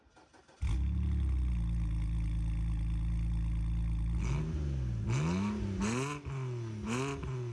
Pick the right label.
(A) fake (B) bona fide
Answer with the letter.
B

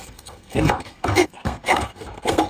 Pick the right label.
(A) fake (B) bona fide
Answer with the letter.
A